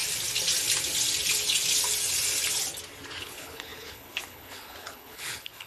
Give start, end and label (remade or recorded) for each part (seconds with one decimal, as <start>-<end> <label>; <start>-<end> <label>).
0.0-3.2 recorded; 3.2-5.7 remade